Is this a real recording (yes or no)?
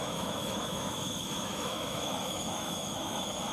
no